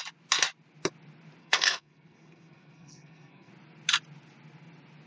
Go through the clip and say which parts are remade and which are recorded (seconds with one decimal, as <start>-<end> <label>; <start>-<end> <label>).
0.0-1.4 recorded; 1.4-3.5 remade; 3.5-5.1 recorded